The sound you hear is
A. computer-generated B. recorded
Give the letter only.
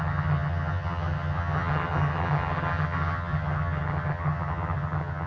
A